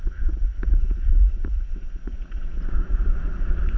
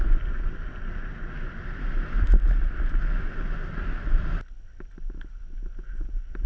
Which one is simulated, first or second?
first